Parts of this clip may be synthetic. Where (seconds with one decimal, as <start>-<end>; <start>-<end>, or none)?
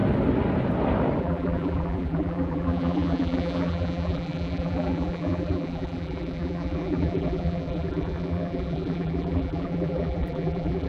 1.2-10.9